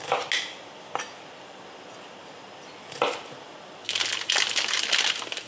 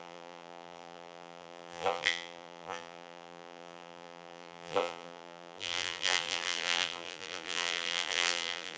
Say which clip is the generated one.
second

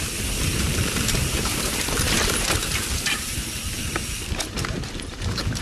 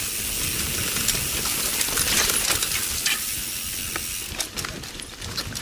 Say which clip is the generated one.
first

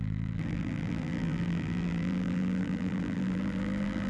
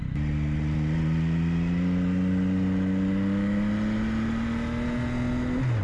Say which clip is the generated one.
first